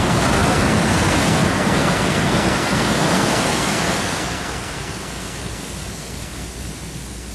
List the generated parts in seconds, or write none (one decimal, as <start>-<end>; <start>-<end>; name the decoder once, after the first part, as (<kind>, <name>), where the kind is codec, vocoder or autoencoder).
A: 0.0-7.3 (codec, SNAC)